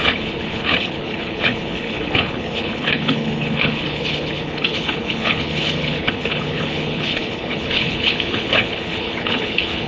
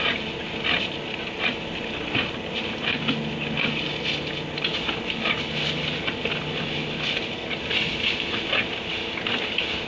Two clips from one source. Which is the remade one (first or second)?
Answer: first